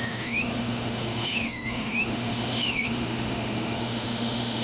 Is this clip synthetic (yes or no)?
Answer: yes